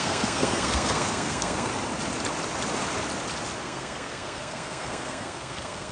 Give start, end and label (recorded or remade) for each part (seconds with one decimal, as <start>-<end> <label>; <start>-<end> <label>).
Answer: 0.0-1.7 remade; 1.7-3.6 recorded; 3.6-5.9 remade